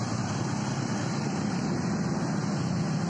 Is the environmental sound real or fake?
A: real